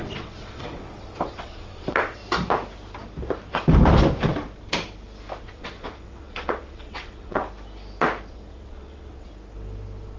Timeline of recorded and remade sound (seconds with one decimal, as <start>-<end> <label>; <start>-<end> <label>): 0.0-2.2 remade; 2.2-5.4 recorded; 5.4-7.4 remade; 7.4-8.3 recorded; 8.3-9.3 remade; 9.3-10.2 recorded

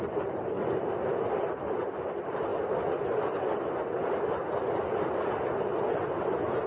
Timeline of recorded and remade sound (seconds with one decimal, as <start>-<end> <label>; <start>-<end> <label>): 0.0-6.7 recorded

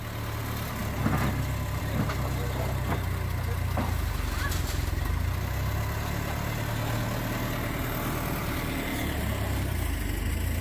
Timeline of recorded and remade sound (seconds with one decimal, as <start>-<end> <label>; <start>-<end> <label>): 0.0-8.4 recorded; 8.4-9.6 remade; 9.6-10.6 recorded

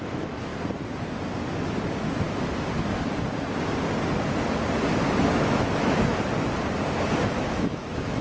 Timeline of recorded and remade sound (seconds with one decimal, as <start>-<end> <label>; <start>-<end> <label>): 0.0-0.5 remade; 0.5-5.3 recorded; 5.3-6.1 remade; 6.1-7.2 recorded; 7.2-8.2 remade

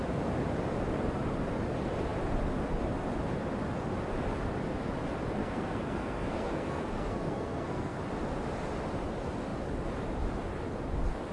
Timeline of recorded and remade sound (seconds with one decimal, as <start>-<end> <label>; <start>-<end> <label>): 0.0-5.4 recorded; 5.4-8.0 remade; 8.0-11.3 recorded

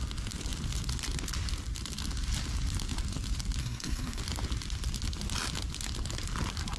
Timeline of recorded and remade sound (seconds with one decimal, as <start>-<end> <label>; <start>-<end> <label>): 0.0-3.6 recorded; 3.6-4.2 remade; 4.2-6.8 recorded